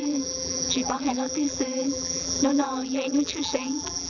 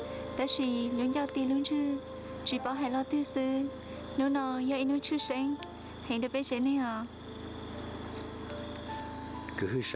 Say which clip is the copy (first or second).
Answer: first